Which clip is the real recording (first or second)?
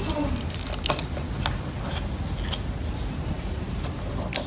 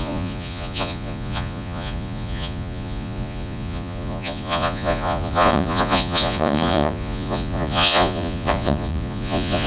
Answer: first